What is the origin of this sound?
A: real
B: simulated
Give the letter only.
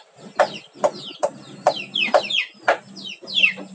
A